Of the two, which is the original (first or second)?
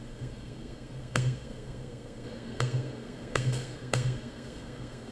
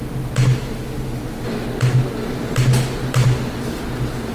second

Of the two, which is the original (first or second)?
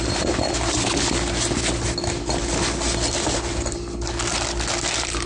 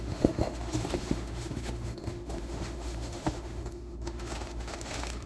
first